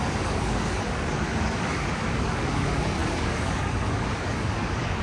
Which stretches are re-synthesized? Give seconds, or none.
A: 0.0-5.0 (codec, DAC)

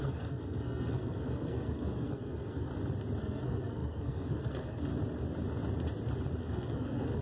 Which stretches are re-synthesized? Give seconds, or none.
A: 0.0-2.7 (codec, SNAC); 3.2-4.9; 6.4-7.2